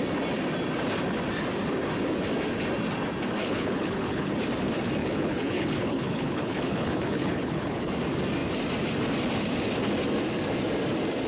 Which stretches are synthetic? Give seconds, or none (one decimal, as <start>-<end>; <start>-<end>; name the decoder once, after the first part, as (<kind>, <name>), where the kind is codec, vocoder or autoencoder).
3.4-4.3 (codec, HILCodec); 5.0-7.9